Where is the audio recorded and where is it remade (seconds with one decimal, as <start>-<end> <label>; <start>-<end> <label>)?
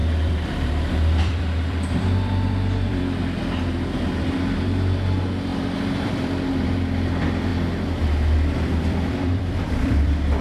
0.0-7.5 remade; 7.5-8.8 recorded; 8.8-10.4 remade